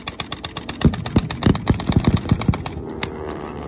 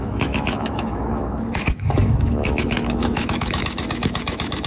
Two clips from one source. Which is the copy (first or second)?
second